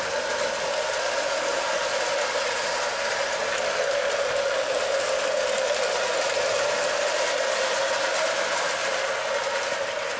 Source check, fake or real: real